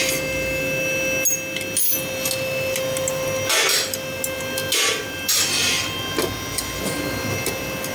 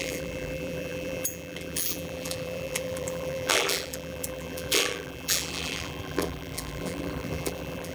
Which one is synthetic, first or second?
second